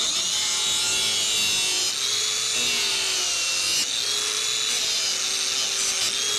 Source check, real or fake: real